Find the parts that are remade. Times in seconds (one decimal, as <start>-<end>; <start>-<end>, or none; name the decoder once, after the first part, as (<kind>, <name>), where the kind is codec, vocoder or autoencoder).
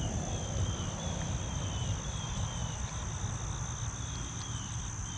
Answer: none